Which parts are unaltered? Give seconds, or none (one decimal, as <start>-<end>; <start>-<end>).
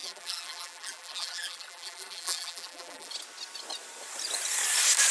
3.1-5.1